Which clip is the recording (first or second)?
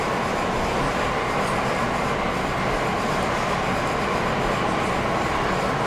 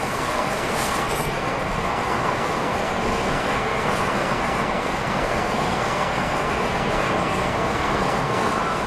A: first